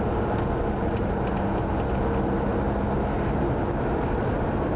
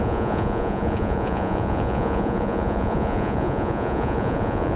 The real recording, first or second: first